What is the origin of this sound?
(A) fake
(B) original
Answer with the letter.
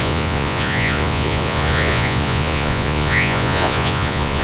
A